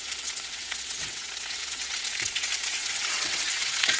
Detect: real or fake fake